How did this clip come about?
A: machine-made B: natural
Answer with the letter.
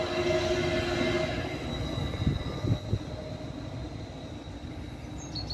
B